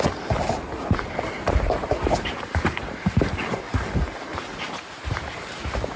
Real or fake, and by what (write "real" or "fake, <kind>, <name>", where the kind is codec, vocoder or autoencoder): fake, vocoder, BigVGAN v2